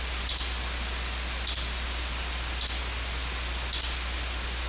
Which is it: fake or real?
real